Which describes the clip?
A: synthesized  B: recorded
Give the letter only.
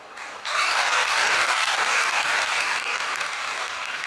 A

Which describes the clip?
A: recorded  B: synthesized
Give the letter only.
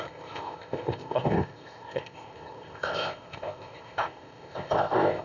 B